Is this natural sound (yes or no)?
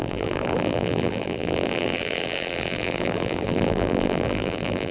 no